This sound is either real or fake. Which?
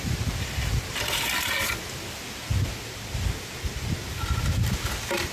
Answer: real